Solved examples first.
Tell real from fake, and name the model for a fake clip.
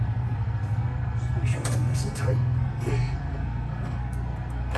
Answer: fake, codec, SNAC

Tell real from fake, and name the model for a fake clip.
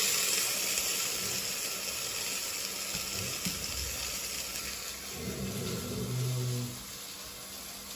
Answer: real